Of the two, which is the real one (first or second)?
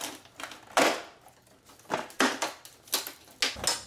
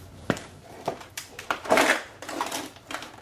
first